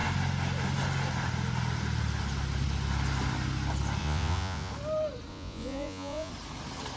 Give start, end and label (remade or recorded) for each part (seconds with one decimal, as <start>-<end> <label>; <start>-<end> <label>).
0.0-4.0 recorded; 4.0-4.7 remade; 4.7-5.3 recorded; 5.3-6.3 remade; 6.3-7.0 recorded